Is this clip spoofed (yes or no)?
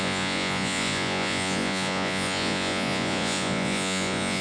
yes